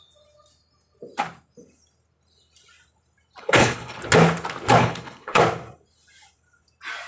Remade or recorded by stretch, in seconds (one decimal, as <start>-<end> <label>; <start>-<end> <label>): 0.0-3.4 recorded; 3.4-4.0 remade; 4.0-4.8 recorded; 4.8-5.4 remade; 5.4-7.1 recorded